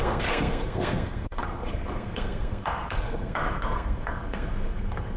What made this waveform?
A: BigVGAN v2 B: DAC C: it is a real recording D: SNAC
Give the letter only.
D